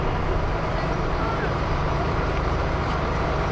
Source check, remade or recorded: remade